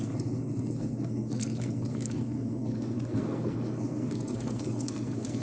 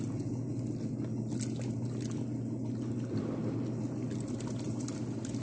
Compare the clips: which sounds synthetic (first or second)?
first